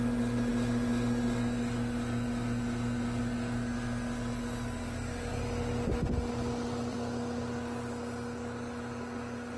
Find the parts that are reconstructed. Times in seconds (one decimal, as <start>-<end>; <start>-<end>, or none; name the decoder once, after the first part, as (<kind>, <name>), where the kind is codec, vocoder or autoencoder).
none